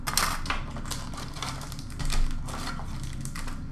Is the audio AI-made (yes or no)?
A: no